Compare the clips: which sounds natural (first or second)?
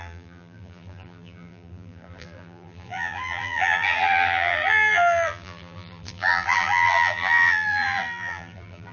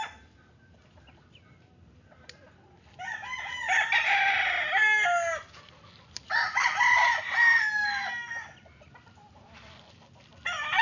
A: second